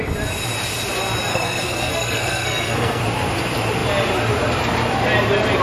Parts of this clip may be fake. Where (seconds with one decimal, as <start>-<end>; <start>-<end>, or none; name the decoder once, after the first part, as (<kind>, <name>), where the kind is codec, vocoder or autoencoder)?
1.3-3.0 (codec, SNAC)